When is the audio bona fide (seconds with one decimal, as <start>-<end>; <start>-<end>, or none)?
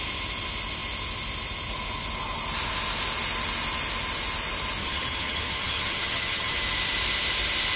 0.0-4.8; 6.5-7.8